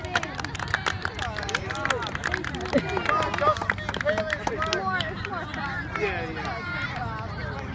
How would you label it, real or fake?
real